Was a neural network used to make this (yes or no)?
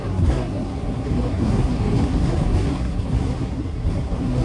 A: yes